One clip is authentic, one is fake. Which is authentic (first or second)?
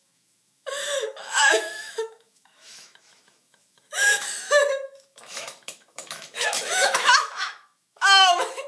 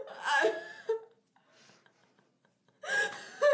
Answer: second